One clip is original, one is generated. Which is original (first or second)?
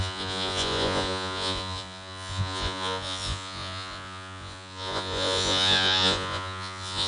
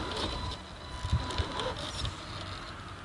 second